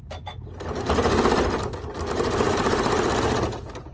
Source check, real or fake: real